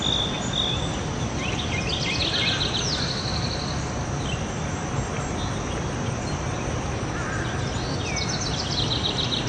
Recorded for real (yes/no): yes